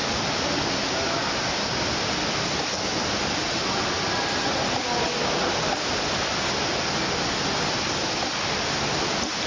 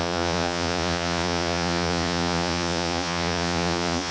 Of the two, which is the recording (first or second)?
first